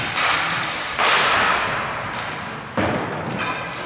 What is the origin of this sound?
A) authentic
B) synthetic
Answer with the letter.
A